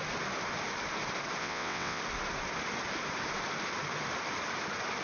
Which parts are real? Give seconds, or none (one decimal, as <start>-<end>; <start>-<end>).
0.0-1.4; 2.0-5.0